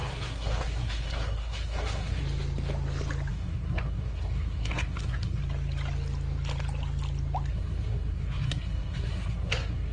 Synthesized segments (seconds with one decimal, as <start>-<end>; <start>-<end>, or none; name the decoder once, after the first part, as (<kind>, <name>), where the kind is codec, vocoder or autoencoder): 0.0-2.2 (codec, SNAC); 3.3-5.4; 7.5-9.9